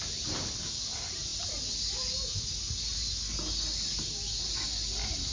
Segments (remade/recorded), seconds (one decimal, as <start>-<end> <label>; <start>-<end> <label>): 0.0-5.3 recorded